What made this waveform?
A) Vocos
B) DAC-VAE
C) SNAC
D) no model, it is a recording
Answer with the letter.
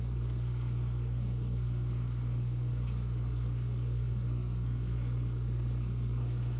C